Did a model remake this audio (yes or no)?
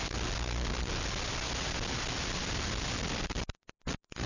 no